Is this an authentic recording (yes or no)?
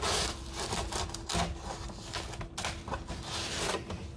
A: yes